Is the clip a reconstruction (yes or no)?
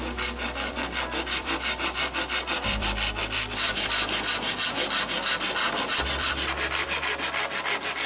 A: yes